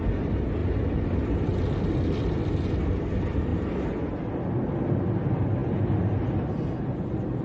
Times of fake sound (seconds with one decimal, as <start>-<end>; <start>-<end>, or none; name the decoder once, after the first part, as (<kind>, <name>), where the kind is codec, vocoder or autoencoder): none